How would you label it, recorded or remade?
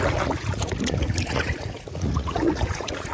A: remade